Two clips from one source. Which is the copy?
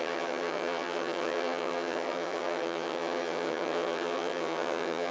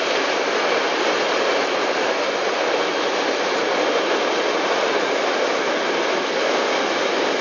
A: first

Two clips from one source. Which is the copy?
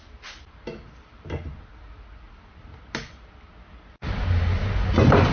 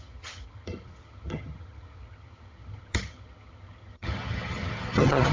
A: second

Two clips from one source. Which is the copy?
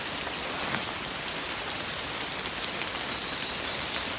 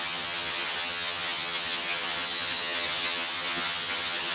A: second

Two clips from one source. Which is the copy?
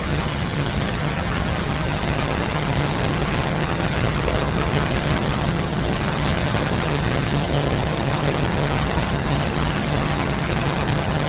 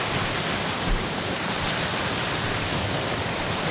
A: first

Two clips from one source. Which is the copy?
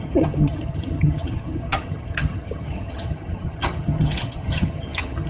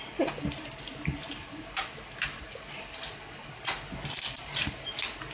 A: first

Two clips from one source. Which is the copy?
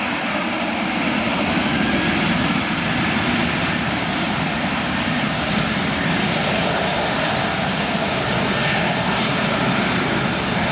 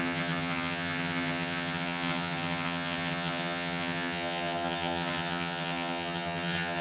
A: second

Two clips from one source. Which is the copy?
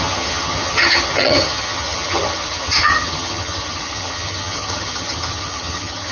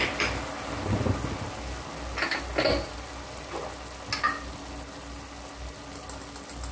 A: first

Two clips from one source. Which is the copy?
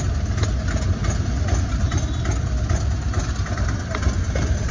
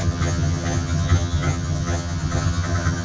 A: second